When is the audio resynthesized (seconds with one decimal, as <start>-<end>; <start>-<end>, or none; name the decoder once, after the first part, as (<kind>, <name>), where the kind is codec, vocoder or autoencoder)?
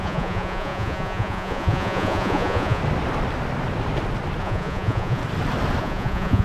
0.0-2.8 (vocoder, Vocos); 4.4-5.2; 5.8-6.4